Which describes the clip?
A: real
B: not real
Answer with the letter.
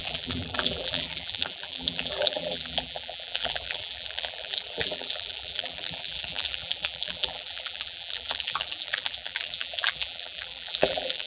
B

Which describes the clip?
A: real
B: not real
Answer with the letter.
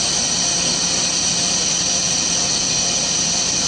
A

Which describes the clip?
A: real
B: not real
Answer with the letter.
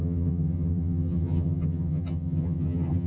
B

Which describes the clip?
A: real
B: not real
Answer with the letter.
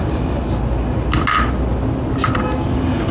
A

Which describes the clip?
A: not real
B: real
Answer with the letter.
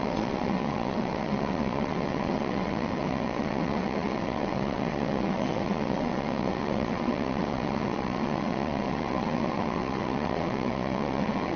A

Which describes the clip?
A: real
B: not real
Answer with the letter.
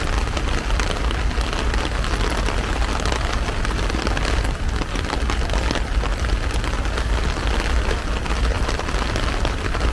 A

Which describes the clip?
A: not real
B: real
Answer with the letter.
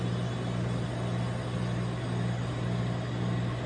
B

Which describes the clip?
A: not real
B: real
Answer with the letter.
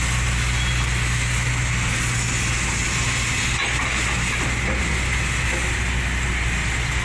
B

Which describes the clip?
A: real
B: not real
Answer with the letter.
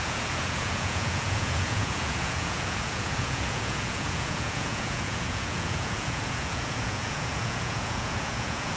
B